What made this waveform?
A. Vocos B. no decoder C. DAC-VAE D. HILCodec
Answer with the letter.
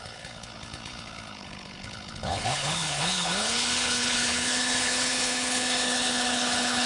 D